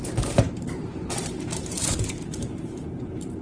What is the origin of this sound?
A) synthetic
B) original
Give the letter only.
A